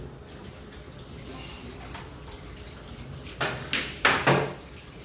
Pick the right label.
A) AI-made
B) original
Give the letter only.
B